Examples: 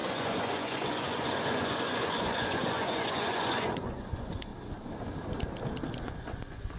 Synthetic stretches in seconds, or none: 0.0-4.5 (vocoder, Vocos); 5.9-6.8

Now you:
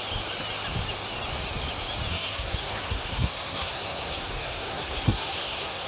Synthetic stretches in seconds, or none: 2.1-5.9 (codec, SNAC)

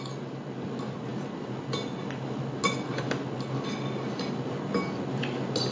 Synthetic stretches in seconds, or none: none

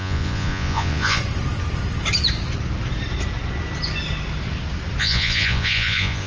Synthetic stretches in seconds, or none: 0.0-1.2 (vocoder, Vocos); 5.0-6.3

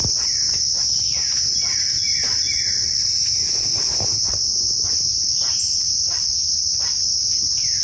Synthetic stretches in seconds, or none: none